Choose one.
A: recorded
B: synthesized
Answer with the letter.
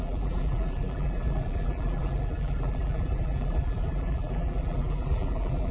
B